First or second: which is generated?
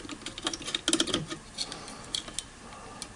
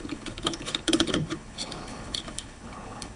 second